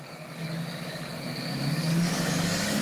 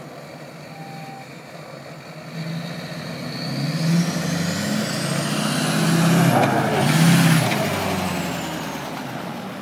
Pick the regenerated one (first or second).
first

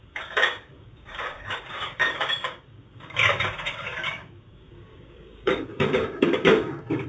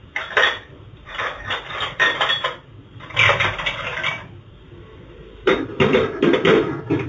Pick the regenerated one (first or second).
first